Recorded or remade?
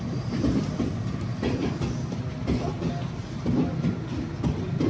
recorded